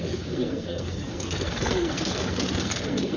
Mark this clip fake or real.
fake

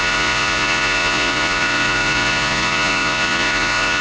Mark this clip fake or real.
fake